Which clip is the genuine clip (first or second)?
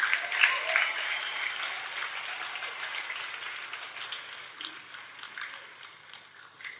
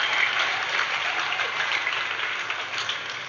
first